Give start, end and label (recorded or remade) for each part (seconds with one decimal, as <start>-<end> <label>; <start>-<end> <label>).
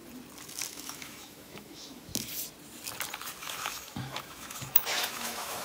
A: 0.0-0.7 recorded; 0.7-2.1 remade; 2.1-3.4 recorded; 3.4-5.6 remade